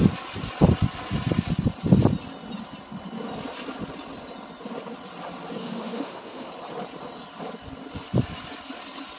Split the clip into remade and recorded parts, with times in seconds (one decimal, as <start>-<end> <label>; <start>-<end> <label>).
0.0-5.6 recorded; 5.6-6.5 remade; 6.5-9.2 recorded